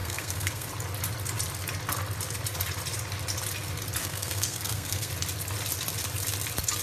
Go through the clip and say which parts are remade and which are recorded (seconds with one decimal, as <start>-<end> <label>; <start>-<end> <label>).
0.0-0.7 remade; 0.7-4.0 recorded; 4.0-5.1 remade; 5.1-6.8 recorded